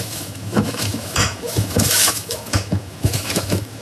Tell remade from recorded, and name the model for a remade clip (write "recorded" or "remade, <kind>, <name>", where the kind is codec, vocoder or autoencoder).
remade, autoencoder, DAC-VAE